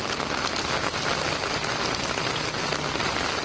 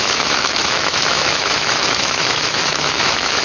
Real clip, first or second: first